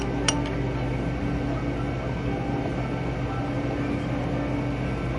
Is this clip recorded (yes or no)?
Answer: yes